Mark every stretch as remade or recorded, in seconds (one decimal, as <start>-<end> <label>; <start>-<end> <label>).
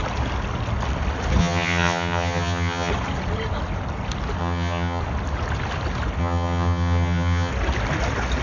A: 0.0-1.4 recorded; 1.4-2.9 remade; 2.9-4.4 recorded; 4.4-5.0 remade; 5.0-6.2 recorded; 6.2-7.5 remade; 7.5-8.4 recorded